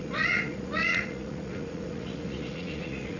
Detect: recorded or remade remade